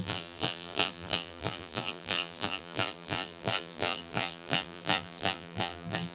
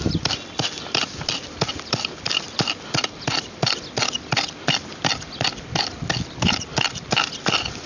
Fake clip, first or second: first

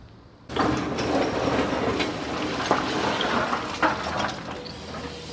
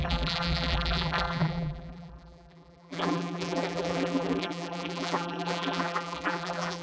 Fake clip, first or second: second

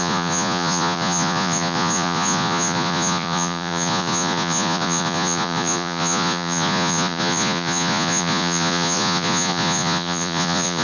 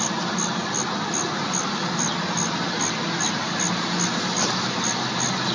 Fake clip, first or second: first